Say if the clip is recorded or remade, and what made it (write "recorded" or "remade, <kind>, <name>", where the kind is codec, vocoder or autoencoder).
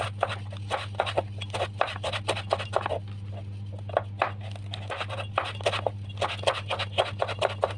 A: recorded